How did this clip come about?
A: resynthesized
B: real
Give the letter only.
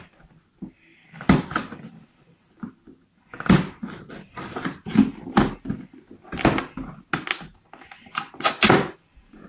B